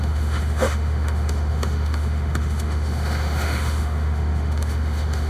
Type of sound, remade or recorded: remade